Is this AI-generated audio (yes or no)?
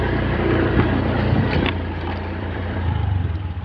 yes